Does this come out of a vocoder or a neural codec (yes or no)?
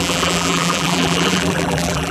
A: yes